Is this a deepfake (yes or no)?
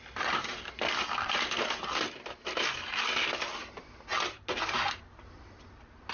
no